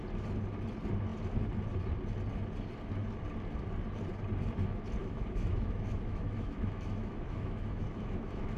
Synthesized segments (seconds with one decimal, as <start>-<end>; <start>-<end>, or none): 5.0-8.6